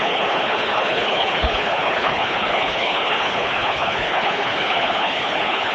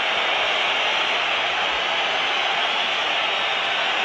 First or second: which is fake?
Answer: first